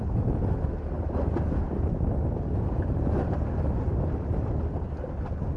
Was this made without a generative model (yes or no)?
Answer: yes